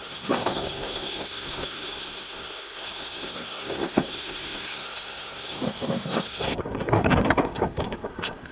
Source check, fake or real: fake